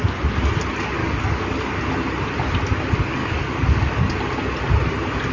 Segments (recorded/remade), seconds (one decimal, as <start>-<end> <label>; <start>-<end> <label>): 0.0-1.0 recorded; 1.0-1.8 remade; 1.8-3.2 recorded; 3.2-4.1 remade; 4.1-5.3 recorded

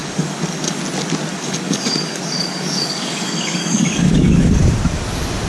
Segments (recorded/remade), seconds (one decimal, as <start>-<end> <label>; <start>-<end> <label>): 0.0-0.8 remade; 0.8-1.3 recorded; 1.3-4.6 remade; 4.6-5.5 recorded

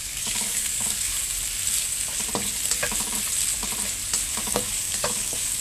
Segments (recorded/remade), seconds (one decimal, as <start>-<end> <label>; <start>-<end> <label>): 0.0-1.2 remade; 1.2-4.3 recorded; 4.3-5.6 remade

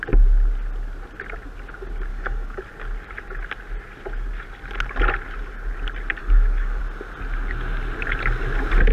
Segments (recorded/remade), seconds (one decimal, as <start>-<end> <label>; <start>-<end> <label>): 0.0-2.1 recorded; 2.1-2.6 remade; 2.6-6.2 recorded; 6.2-6.8 remade; 6.8-8.9 recorded

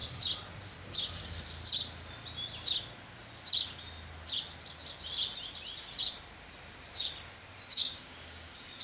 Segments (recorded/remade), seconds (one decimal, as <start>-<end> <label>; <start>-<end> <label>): 0.0-7.7 recorded; 7.7-8.8 remade

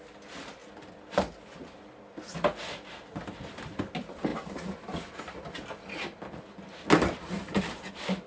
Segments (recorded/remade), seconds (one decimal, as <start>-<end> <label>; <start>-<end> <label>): 0.0-8.3 recorded

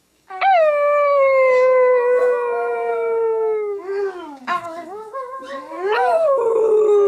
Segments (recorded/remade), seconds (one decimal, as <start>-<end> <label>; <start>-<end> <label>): 0.0-7.1 remade